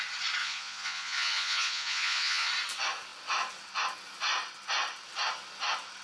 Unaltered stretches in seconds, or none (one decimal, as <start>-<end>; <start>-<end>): 0.0-0.4; 2.5-6.0